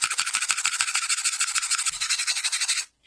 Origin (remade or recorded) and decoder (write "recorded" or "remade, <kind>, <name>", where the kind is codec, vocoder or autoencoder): recorded